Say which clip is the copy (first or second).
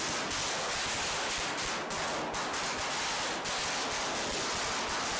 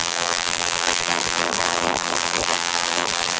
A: second